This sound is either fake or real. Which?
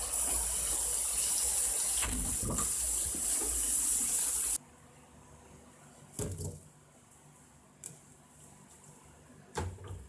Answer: real